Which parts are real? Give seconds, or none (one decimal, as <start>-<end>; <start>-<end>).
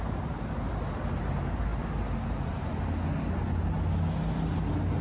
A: 0.0-5.0